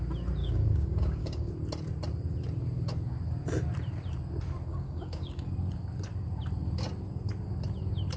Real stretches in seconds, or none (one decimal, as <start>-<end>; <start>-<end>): 0.0-0.4; 1.5-4.7; 5.5-8.2